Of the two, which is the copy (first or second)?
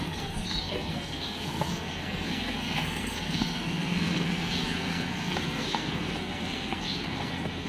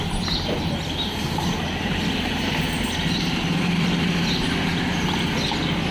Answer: first